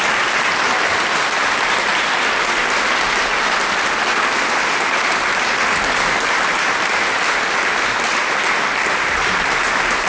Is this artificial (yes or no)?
no